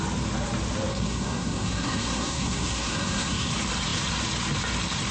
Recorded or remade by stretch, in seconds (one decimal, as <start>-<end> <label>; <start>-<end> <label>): 0.0-0.9 recorded; 0.9-3.5 remade; 3.5-5.1 recorded